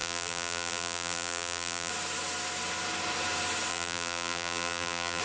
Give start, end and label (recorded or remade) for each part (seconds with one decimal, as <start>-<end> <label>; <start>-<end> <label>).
0.0-1.9 remade; 1.9-3.7 recorded; 3.7-5.2 remade